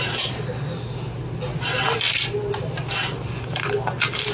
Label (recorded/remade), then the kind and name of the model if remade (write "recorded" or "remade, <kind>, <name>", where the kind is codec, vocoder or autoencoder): recorded